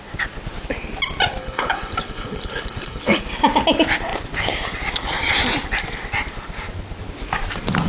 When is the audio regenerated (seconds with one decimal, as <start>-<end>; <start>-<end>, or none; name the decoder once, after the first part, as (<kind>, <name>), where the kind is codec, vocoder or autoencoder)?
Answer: 1.4-3.2 (codec, HILCodec)